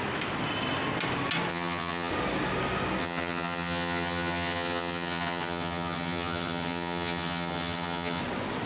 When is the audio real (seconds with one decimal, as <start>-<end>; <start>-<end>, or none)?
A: 0.0-1.5; 2.1-3.0; 8.2-8.7